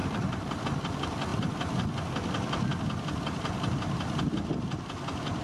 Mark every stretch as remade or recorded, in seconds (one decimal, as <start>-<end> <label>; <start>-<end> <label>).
0.0-0.6 remade; 0.6-5.4 recorded